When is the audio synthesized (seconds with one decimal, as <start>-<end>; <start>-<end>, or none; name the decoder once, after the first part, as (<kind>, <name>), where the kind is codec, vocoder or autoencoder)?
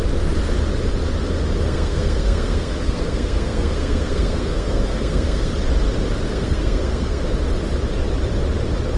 1.6-5.5 (codec, SNAC); 6.3-7.2